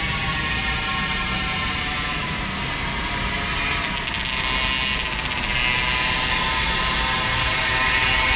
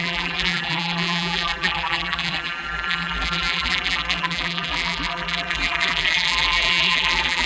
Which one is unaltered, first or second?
first